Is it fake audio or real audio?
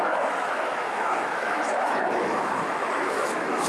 fake